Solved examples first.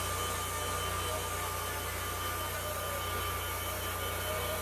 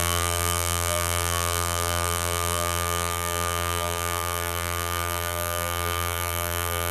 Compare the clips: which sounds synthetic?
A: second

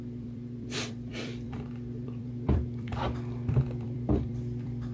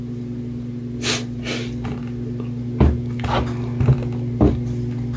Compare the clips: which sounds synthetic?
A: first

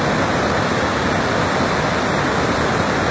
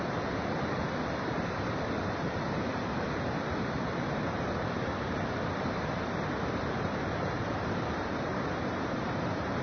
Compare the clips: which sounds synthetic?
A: second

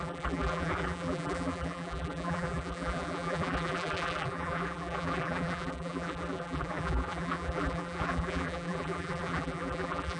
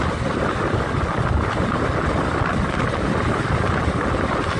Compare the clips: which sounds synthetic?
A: first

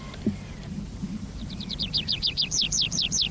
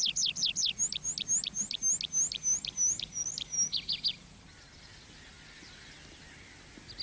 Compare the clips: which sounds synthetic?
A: first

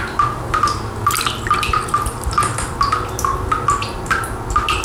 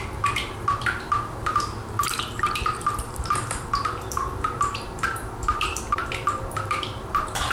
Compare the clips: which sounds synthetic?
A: second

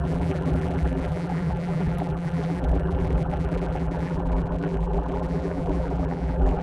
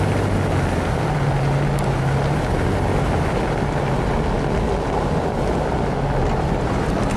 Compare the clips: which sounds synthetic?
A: first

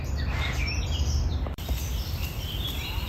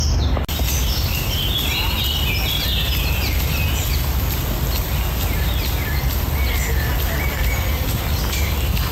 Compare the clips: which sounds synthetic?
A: first